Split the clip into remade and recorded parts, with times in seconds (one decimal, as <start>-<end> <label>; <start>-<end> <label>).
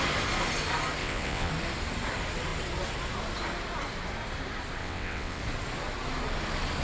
0.0-1.0 recorded; 1.0-1.5 remade; 1.5-4.8 recorded; 4.8-5.4 remade; 5.4-6.8 recorded